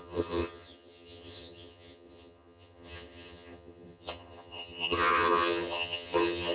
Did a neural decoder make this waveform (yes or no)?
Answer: yes